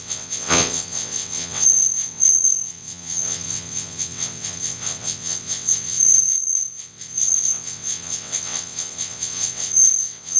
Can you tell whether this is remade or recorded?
remade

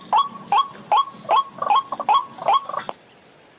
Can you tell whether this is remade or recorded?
recorded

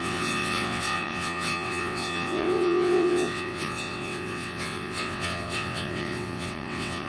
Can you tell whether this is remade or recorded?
remade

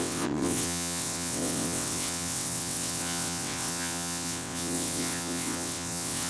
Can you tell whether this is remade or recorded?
remade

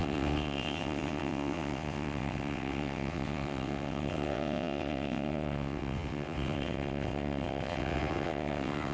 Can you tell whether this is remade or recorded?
remade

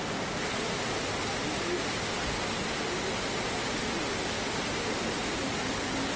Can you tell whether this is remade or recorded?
recorded